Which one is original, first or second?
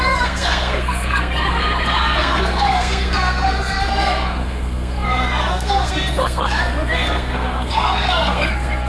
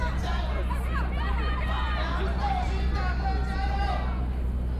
second